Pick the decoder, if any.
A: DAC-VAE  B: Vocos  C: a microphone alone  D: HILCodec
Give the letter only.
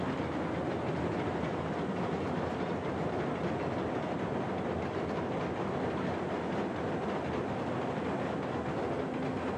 C